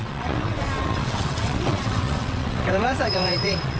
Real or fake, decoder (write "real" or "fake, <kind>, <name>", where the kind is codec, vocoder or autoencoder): fake, vocoder, WaveNeXt